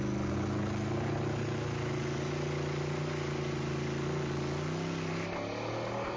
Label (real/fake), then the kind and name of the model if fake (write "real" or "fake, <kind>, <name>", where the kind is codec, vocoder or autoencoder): real